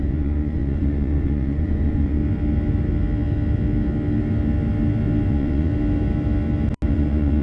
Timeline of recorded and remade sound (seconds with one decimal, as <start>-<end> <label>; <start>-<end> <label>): 0.0-2.2 remade; 2.2-5.3 recorded; 5.3-5.7 remade; 5.7-6.9 recorded; 6.9-7.4 remade